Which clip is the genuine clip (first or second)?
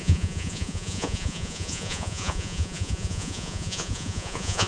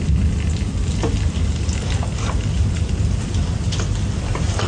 second